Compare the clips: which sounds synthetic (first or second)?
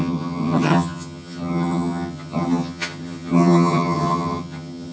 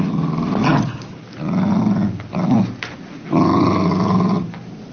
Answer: first